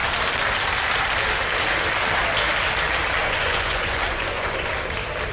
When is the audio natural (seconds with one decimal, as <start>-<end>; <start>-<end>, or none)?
0.0-3.2; 4.7-5.3

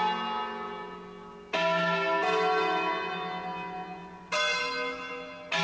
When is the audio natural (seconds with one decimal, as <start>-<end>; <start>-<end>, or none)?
0.0-5.6